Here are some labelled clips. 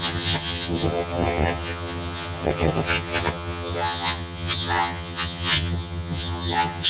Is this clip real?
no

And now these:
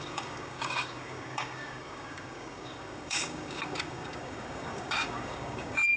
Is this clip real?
no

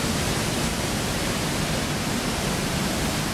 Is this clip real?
yes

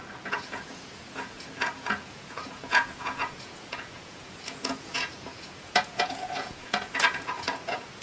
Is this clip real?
no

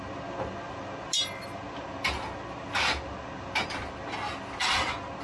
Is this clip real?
yes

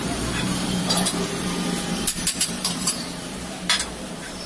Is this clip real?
no